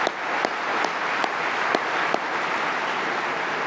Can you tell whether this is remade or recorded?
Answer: recorded